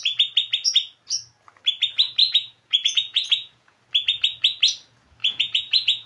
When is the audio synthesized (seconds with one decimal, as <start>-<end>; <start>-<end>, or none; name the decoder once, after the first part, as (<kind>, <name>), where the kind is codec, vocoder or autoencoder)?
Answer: 2.2-3.8 (vocoder, Vocos); 5.2-6.1